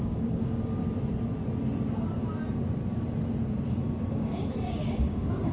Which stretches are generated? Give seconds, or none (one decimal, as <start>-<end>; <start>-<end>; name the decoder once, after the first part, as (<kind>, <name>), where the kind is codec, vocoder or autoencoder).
0.0-0.8 (codec, DAC); 4.1-5.5